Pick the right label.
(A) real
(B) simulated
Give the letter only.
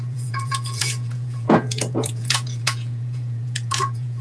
B